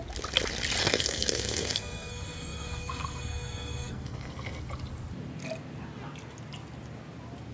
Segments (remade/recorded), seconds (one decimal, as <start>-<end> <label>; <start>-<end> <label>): 0.0-0.8 recorded; 0.8-4.6 remade; 4.6-7.5 recorded